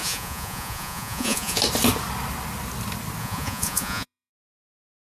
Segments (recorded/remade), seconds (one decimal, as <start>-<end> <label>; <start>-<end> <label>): 0.0-1.6 remade; 1.6-3.2 recorded; 3.2-4.3 remade; 4.3-5.2 recorded

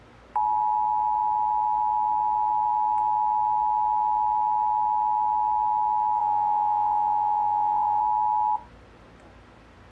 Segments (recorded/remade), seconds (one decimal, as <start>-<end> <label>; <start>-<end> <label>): 0.0-6.2 recorded; 6.2-8.0 remade; 8.0-9.9 recorded